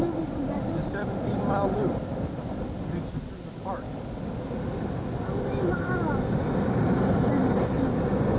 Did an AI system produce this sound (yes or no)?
no